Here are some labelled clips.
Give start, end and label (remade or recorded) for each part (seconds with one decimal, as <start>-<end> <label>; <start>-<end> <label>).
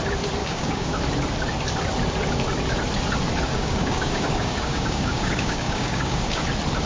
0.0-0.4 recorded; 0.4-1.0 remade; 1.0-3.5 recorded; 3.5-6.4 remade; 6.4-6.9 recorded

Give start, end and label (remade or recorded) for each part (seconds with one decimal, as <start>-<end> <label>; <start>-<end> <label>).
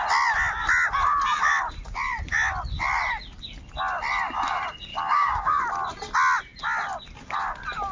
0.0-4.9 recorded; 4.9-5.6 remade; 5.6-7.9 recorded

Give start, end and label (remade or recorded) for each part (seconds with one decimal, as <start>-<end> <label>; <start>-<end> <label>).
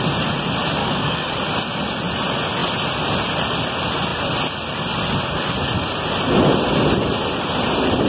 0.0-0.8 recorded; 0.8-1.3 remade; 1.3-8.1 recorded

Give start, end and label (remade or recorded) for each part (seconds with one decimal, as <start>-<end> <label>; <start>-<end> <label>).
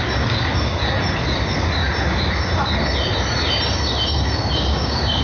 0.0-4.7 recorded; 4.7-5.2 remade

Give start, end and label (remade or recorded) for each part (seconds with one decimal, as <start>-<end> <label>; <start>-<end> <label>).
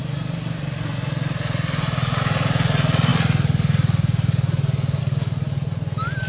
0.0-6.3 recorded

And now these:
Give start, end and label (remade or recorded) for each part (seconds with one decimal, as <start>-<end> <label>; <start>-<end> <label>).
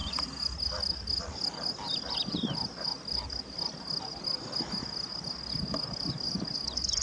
0.0-7.0 recorded